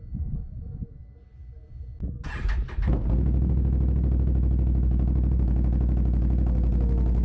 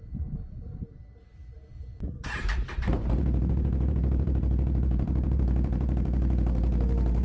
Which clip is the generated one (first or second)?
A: second